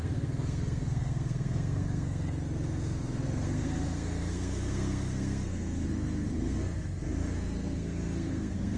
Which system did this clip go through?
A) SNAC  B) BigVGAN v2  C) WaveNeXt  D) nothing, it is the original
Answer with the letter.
A